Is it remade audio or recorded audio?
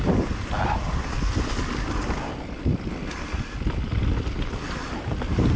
recorded